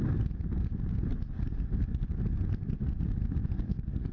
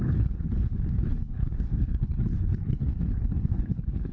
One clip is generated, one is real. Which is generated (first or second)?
second